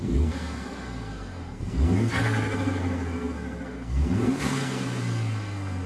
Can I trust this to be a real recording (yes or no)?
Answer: no